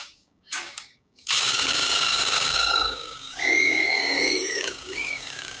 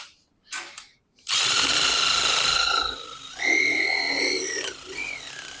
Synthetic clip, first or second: first